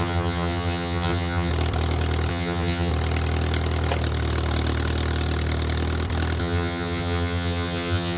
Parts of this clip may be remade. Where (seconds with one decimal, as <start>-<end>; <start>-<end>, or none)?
0.0-1.5; 2.3-2.9; 6.4-8.2